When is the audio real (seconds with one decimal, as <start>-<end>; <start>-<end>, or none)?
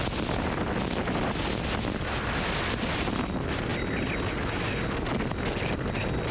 0.0-6.3